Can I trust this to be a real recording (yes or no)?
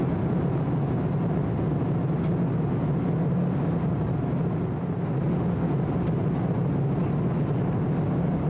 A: yes